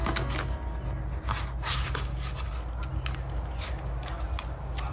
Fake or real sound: real